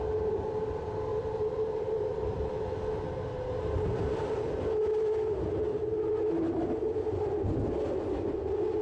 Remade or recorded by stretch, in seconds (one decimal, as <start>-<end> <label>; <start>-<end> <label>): 0.0-1.1 recorded; 1.1-2.5 remade; 2.5-8.8 recorded